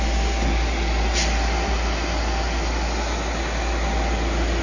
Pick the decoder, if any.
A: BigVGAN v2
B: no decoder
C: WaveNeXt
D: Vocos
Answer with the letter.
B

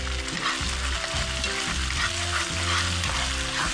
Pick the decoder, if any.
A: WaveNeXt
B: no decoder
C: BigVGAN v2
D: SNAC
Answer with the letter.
B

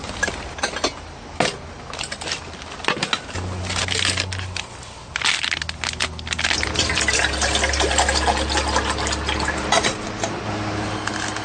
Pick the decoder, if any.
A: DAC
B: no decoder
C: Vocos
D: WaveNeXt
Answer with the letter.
B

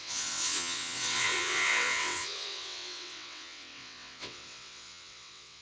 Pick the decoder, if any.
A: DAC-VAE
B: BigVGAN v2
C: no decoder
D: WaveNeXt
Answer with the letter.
D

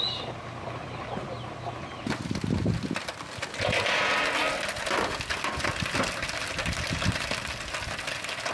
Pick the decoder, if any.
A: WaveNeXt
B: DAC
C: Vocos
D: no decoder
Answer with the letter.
D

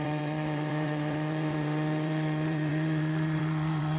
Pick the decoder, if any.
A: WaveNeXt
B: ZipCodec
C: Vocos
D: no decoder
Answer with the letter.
A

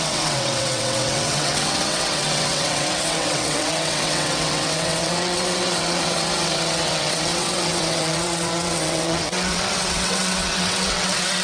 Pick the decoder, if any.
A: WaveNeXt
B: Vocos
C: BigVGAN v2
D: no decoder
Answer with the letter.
A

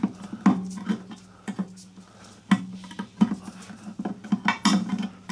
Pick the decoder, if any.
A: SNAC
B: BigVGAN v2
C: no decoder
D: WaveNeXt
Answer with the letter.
C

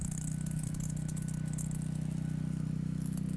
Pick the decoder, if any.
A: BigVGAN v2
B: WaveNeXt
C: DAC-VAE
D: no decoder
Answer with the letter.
D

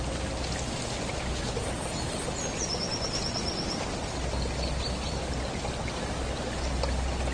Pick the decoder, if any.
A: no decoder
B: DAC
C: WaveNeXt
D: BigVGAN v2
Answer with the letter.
A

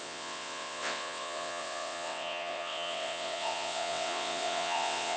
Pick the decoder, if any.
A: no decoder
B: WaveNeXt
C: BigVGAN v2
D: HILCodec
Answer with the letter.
B